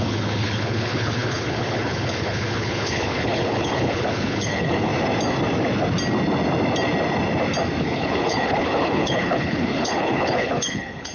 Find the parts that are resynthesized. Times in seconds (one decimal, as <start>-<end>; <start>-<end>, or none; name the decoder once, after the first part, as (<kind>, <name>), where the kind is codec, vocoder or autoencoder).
0.0-4.9 (codec, HILCodec); 7.8-11.1